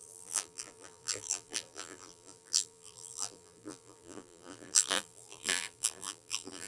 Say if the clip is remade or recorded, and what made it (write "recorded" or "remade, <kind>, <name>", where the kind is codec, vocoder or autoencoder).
remade, vocoder, BigVGAN v2